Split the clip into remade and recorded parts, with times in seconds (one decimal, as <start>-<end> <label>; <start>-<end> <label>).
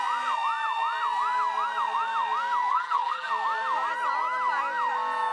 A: 0.0-2.7 recorded; 2.7-3.3 remade; 3.3-5.3 recorded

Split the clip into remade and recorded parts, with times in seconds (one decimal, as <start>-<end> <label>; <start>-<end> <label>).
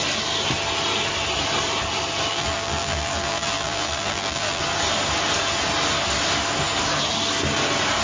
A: 0.0-2.3 recorded; 2.3-4.6 remade; 4.6-8.0 recorded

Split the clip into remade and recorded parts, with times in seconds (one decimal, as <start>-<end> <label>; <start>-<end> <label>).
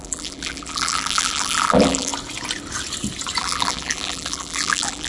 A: 0.0-2.1 remade; 2.1-3.4 recorded; 3.4-5.1 remade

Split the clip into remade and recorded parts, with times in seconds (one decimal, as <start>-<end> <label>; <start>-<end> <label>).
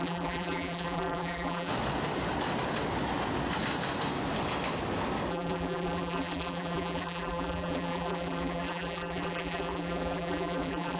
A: 0.0-1.7 remade; 1.7-5.3 recorded; 5.3-11.0 remade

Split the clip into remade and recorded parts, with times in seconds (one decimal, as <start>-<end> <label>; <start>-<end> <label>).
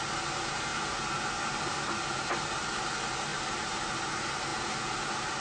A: 0.0-3.3 recorded; 3.3-4.0 remade; 4.0-4.5 recorded; 4.5-5.0 remade; 5.0-5.4 recorded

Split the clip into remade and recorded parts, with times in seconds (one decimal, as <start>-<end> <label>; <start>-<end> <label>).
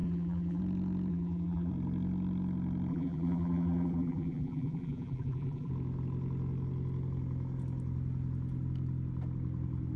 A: 0.0-0.6 remade; 0.6-1.1 recorded; 1.1-1.7 remade; 1.7-2.9 recorded; 2.9-5.7 remade; 5.7-10.0 recorded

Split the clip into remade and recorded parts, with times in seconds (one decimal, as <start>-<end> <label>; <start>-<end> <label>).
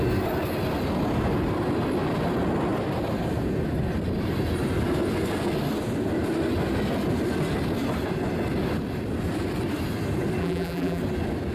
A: 0.0-10.4 recorded; 10.4-11.0 remade; 11.0-11.5 recorded